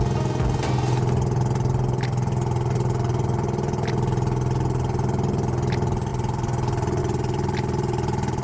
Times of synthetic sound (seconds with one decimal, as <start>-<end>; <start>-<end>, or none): none